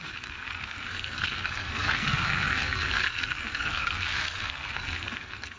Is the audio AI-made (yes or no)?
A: yes